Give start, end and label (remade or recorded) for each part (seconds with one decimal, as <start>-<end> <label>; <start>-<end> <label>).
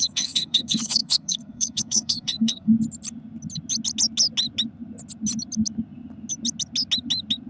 0.0-2.7 remade; 2.7-7.5 recorded